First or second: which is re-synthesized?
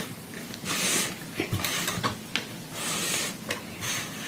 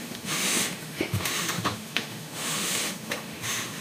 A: second